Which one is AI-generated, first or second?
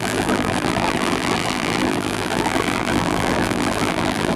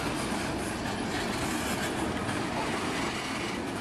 first